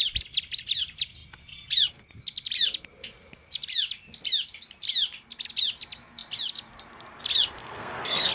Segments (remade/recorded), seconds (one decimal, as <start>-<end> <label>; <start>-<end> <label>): 0.0-7.6 recorded; 7.6-8.3 remade